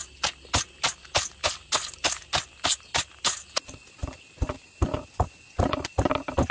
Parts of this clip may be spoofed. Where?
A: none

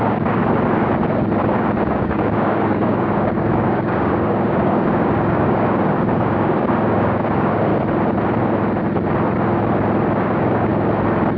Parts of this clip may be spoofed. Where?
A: 0.0-0.4 (codec, DAC); 1.8-7.7; 10.2-10.7